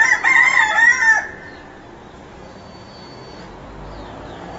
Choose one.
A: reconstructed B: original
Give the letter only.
B